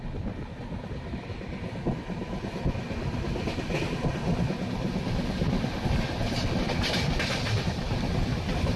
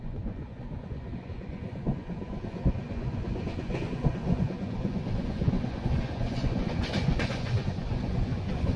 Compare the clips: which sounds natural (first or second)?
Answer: first